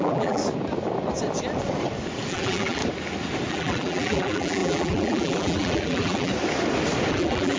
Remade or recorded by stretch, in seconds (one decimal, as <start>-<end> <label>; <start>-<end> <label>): 0.0-0.4 remade; 0.4-2.3 recorded; 2.3-2.8 remade; 2.8-3.5 recorded; 3.5-6.3 remade; 6.3-7.1 recorded; 7.1-7.6 remade